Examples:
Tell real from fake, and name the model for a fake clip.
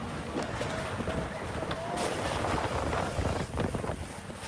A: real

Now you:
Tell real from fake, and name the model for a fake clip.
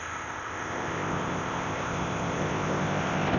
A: fake, codec, ZipCodec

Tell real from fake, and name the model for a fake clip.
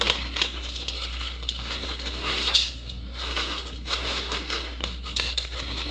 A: fake, codec, SNAC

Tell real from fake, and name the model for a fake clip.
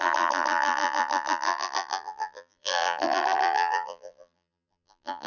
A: fake, vocoder, BigVGAN v2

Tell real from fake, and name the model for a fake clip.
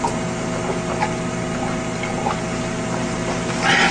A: real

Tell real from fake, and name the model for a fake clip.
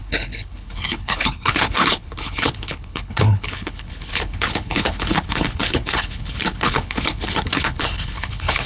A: fake, codec, HILCodec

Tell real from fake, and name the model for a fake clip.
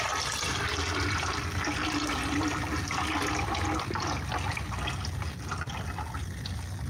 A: real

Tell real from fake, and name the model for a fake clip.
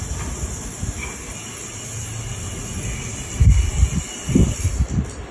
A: real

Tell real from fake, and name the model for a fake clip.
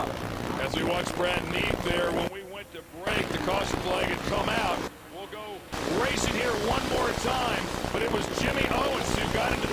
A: real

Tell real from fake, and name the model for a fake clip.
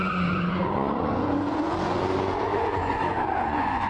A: fake, vocoder, Vocos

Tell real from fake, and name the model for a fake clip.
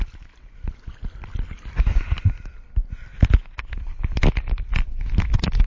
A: real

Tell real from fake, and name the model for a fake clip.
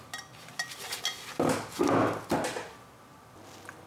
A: real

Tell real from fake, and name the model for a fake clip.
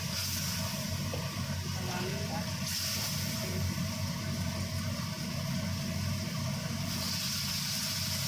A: real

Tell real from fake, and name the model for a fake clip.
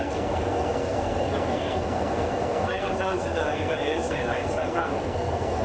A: fake, codec, SNAC